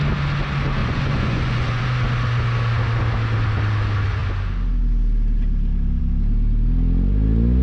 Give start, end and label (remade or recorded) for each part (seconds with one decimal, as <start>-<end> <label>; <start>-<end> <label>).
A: 0.0-0.8 recorded; 0.8-1.8 remade; 1.8-7.6 recorded